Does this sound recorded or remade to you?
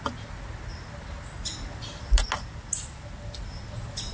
recorded